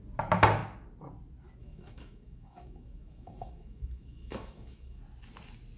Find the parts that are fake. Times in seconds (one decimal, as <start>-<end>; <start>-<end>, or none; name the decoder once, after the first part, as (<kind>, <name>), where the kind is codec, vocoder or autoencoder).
1.6-5.0 (autoencoder, DAC-VAE)